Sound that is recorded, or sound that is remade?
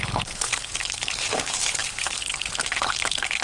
remade